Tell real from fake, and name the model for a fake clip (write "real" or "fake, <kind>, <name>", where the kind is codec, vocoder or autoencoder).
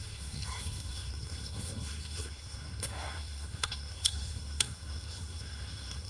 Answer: fake, codec, SNAC